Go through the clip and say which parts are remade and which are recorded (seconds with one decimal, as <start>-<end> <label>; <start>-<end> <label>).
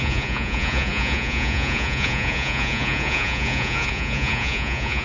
0.0-5.0 remade